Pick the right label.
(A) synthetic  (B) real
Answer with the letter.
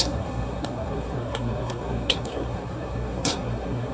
A